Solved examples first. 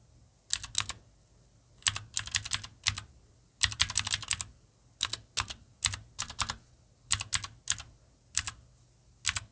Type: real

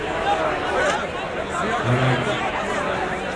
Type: real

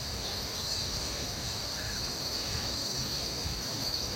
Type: fake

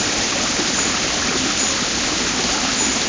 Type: real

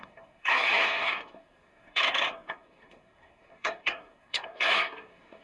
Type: fake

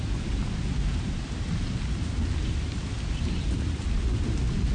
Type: real